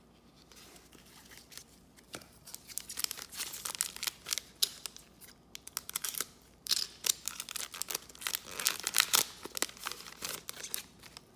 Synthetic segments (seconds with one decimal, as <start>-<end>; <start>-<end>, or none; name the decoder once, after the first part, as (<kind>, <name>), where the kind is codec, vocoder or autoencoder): 1.6-2.5 (vocoder, BigVGAN v2); 5.8-6.7